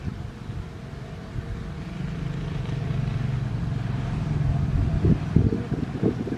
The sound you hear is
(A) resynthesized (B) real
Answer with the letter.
A